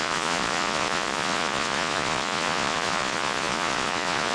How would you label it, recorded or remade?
remade